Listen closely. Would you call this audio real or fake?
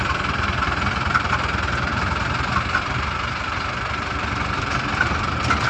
fake